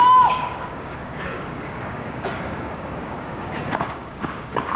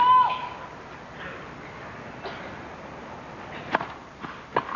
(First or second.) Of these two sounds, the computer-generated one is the first